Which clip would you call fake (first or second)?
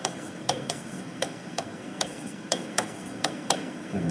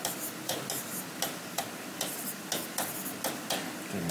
first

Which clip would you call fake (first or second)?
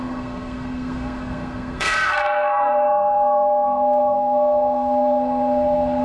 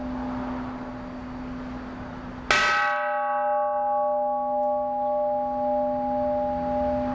first